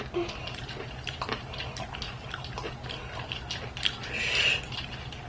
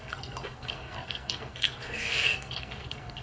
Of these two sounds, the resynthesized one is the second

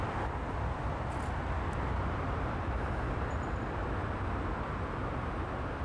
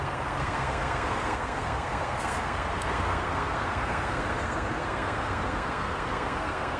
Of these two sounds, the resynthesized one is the second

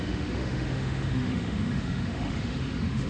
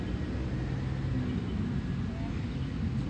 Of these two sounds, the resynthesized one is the first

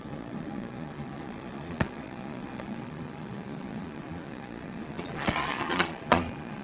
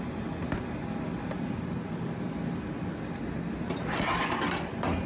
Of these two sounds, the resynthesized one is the first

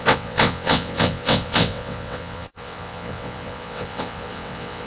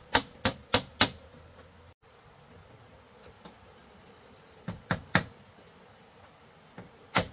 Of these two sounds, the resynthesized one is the first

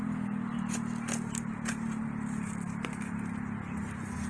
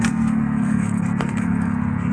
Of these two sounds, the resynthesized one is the second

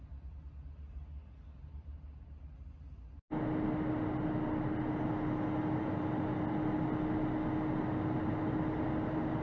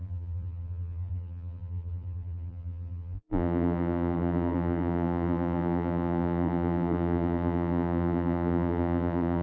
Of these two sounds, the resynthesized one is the second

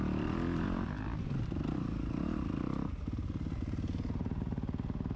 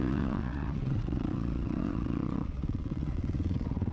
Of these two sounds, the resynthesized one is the second